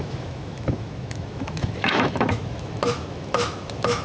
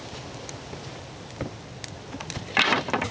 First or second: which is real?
second